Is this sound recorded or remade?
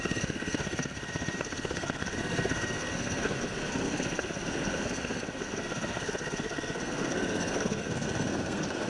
remade